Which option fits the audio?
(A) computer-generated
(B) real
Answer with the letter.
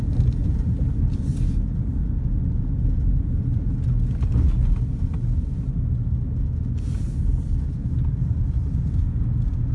B